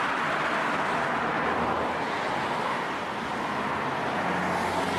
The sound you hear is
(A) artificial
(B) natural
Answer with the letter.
B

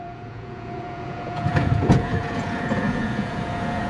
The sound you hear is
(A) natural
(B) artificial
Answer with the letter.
B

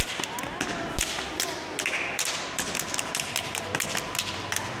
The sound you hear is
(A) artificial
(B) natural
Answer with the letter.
A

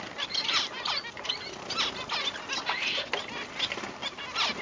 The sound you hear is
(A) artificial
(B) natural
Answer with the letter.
B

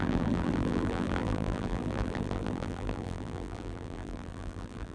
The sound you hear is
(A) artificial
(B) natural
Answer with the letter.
A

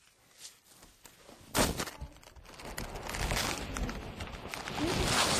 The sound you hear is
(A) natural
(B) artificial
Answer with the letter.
A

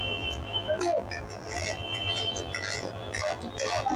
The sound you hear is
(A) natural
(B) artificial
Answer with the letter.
B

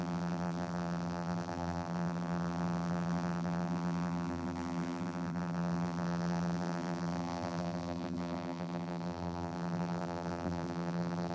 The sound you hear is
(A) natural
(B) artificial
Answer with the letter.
B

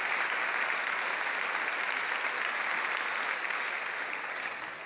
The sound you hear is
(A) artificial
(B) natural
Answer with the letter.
B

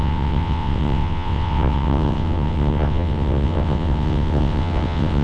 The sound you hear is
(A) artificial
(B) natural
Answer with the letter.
A